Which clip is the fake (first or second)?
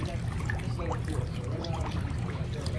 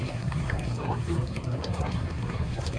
second